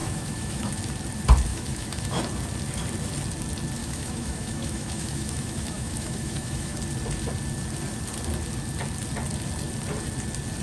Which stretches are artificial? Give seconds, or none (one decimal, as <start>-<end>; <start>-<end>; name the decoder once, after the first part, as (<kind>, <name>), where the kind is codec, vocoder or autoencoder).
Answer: 0.0-0.7 (autoencoder, DAC-VAE); 1.5-2.2; 3.8-6.8